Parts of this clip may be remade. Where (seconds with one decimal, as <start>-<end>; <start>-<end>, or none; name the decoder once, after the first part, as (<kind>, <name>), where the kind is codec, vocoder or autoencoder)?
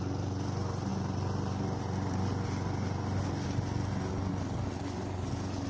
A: none